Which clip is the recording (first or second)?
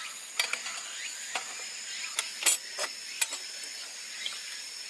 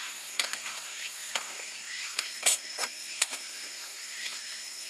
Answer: first